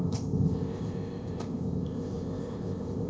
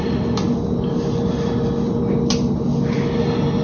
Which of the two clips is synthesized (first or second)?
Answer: first